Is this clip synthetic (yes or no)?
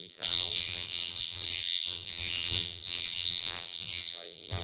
yes